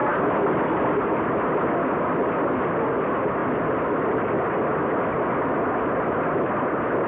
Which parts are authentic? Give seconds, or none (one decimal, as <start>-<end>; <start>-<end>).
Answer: 0.0-7.1